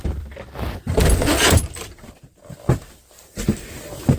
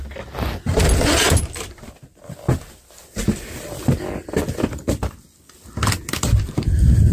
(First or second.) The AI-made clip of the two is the first